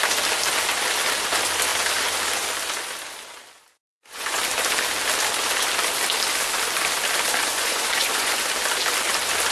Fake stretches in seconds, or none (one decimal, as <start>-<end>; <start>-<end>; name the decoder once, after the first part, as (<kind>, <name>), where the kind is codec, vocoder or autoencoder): 3.8-4.4 (vocoder, Vocos); 7.5-8.4